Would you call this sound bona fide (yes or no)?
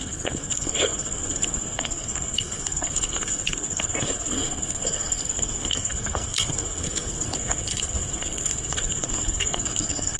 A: no